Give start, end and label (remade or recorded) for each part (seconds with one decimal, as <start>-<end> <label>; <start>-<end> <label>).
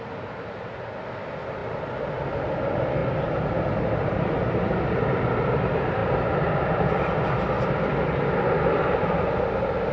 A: 0.0-9.9 recorded